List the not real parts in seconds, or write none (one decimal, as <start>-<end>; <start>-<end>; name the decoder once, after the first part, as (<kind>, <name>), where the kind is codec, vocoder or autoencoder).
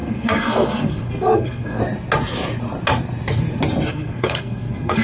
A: 0.0-1.8 (codec, SNAC); 3.9-5.0